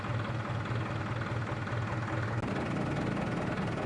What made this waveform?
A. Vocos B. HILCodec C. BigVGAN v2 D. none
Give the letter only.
D